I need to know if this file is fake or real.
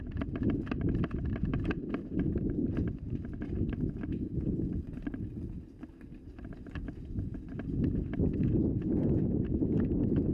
real